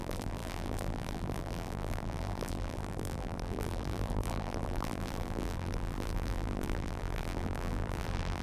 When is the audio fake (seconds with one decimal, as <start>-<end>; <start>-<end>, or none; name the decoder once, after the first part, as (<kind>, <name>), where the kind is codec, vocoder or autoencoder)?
0.0-8.4 (vocoder, BigVGAN v2)